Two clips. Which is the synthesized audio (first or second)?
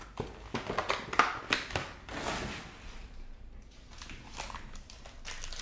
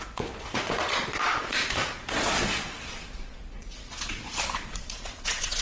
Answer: second